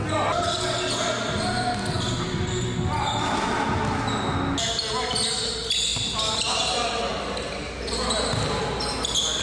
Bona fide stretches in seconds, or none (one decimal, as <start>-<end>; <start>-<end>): 0.0-9.4